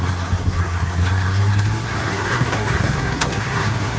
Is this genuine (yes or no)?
no